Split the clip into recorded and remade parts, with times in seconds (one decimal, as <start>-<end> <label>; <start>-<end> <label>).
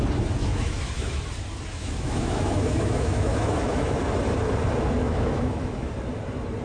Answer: 0.0-0.5 recorded; 0.5-1.2 remade; 1.2-1.7 recorded; 1.7-4.0 remade; 4.0-5.0 recorded; 5.0-5.9 remade; 5.9-6.6 recorded